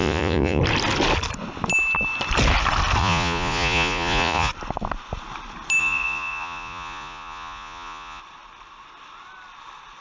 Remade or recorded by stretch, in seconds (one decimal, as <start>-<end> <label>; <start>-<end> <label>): 0.0-0.6 remade; 0.6-3.0 recorded; 3.0-4.5 remade; 4.5-5.8 recorded; 5.8-8.2 remade; 8.2-10.0 recorded